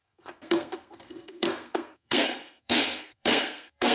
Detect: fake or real fake